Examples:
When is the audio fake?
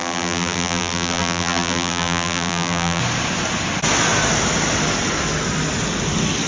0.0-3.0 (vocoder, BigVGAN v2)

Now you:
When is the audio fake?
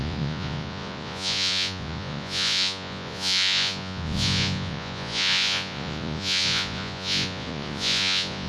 0.0-8.5 (vocoder, Vocos)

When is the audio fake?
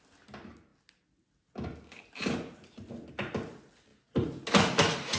none